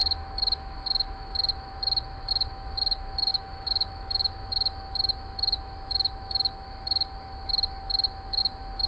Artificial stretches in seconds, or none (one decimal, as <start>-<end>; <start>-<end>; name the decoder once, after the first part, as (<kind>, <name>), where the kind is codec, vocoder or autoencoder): 0.0-8.9 (autoencoder, DAC-VAE)